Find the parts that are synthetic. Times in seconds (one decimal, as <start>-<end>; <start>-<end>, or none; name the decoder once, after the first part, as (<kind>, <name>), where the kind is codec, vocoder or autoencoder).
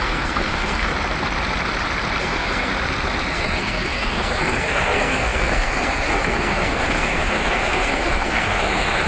0.0-0.9 (codec, SNAC); 2.2-2.7; 3.3-9.1